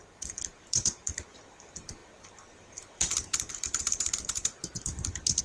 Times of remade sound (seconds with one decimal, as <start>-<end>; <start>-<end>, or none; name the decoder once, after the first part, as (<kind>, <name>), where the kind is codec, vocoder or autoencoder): 0.0-5.4 (vocoder, BigVGAN v2)